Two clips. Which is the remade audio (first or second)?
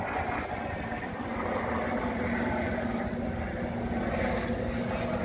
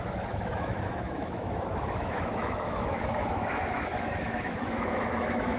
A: second